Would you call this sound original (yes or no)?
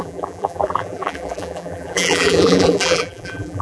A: no